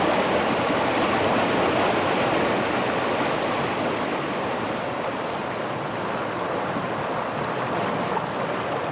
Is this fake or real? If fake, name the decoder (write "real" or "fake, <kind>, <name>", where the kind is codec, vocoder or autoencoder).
real